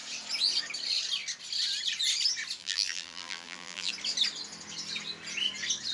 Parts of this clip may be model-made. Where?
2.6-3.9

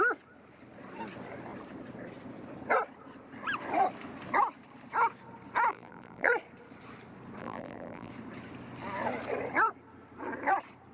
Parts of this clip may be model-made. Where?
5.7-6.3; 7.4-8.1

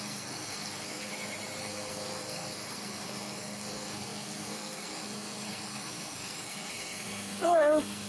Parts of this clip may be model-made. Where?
0.0-1.1; 1.6-8.1

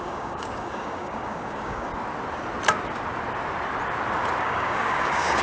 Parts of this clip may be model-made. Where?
0.0-1.9; 4.4-5.4